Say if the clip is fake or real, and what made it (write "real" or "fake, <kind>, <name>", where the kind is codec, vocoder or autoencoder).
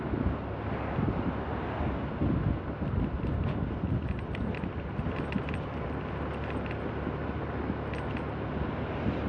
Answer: real